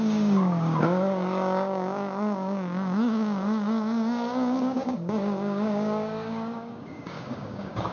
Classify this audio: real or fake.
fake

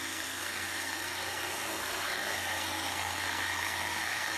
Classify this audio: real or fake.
fake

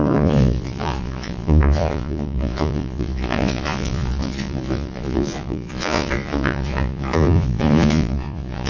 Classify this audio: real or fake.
fake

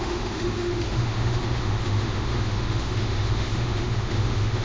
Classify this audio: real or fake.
fake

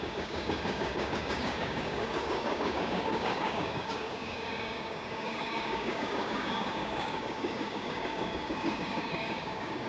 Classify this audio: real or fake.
fake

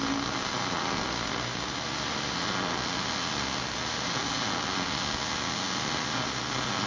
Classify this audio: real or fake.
real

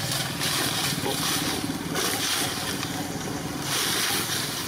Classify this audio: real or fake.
real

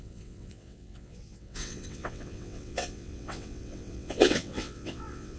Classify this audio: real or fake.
fake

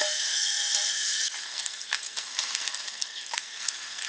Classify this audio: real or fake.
fake